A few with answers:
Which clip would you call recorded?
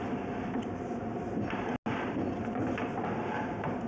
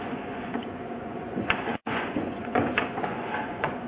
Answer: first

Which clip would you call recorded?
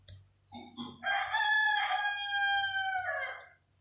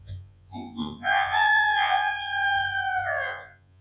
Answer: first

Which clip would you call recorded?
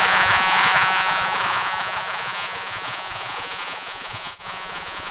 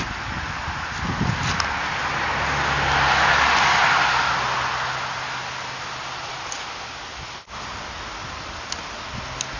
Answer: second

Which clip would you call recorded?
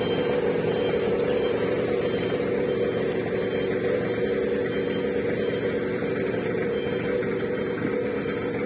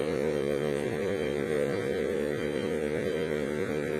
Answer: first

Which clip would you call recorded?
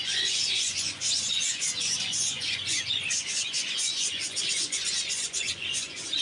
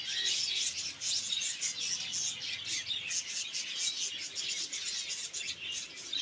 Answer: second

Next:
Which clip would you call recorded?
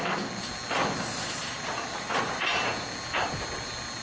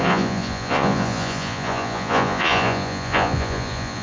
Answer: first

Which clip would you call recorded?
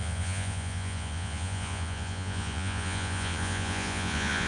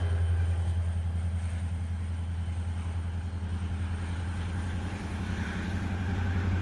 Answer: second